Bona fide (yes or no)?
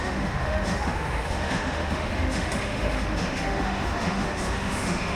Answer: no